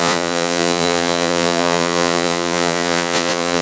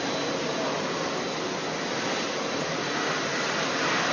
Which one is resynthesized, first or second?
first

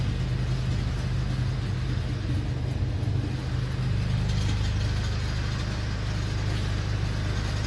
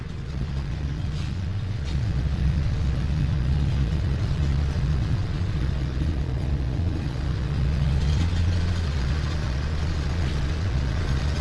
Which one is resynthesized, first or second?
second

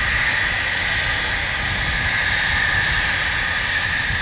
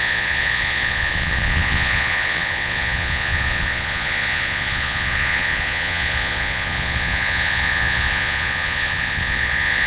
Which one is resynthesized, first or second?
second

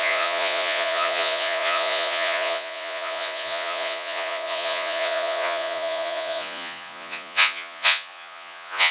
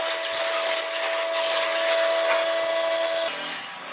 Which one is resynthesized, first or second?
first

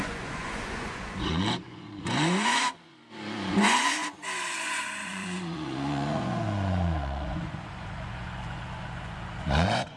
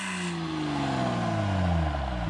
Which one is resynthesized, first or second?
first